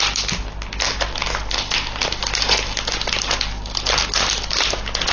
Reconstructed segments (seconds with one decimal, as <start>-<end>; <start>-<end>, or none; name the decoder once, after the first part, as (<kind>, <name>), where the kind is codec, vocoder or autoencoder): none